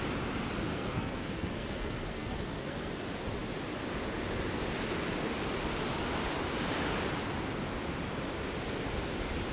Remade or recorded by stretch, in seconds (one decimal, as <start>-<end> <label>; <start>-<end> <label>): 0.0-0.7 recorded; 0.7-2.9 remade; 2.9-9.5 recorded